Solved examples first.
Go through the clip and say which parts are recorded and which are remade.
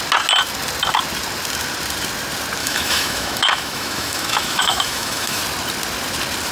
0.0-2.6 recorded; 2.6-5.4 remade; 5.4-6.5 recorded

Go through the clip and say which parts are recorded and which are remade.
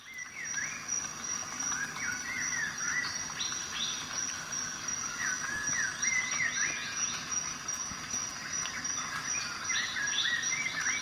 0.0-6.8 recorded; 6.8-7.3 remade; 7.3-11.0 recorded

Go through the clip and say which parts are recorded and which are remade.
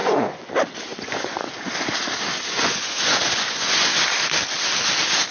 0.0-0.5 remade; 0.5-0.9 recorded; 0.9-1.7 remade; 1.7-2.3 recorded; 2.3-3.9 remade; 3.9-5.3 recorded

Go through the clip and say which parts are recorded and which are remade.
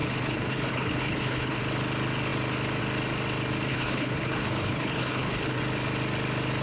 0.0-1.6 remade; 1.6-3.7 recorded; 3.7-5.6 remade; 5.6-6.6 recorded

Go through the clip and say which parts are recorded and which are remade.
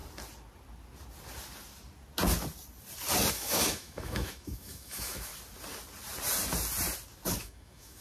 0.0-3.3 recorded; 3.3-5.3 remade; 5.3-7.4 recorded; 7.4-8.0 remade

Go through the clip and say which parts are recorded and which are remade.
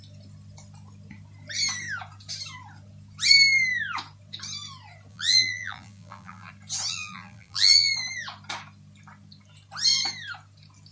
0.0-5.1 recorded; 5.1-6.5 remade; 6.5-6.9 recorded; 6.9-7.9 remade; 7.9-10.9 recorded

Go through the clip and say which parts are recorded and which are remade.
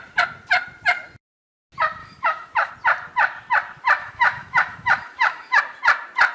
0.0-2.0 recorded; 2.0-2.7 remade; 2.7-4.0 recorded; 4.0-5.6 remade; 5.6-6.3 recorded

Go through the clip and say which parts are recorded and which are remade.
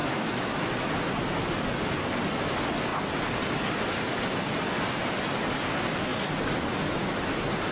0.0-0.7 remade; 0.7-7.7 recorded